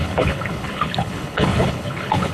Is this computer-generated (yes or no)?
yes